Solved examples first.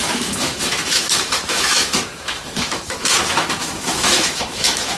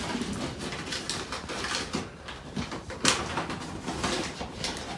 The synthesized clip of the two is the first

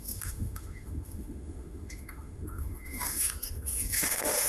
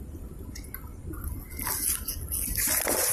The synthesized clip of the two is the first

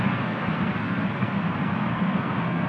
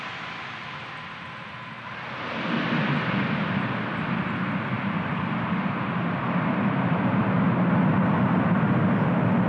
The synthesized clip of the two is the first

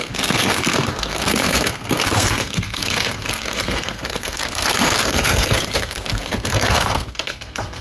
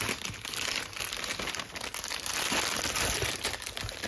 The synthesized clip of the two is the first